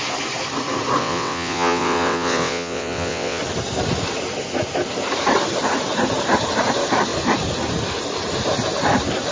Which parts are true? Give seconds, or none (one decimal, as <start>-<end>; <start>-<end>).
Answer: 0.0-1.0; 3.4-9.3